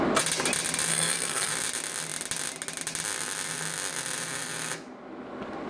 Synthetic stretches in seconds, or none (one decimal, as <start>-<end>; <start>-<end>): 0.9-1.5